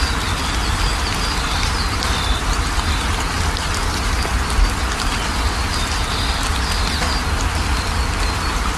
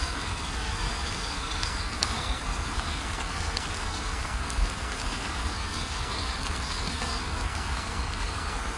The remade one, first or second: second